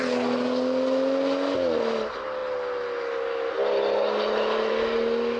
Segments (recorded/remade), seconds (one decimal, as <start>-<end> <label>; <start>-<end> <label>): 0.0-5.4 recorded